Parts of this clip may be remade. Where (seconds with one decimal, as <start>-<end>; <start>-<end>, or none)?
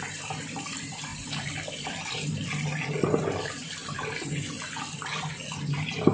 0.0-1.1; 1.6-3.8